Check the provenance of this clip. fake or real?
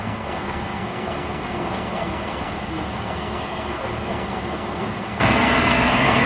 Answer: fake